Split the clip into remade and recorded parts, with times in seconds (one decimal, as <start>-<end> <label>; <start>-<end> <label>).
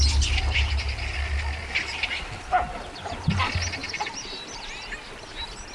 0.0-1.6 recorded; 1.6-2.6 remade; 2.6-3.8 recorded; 3.8-5.2 remade; 5.2-5.7 recorded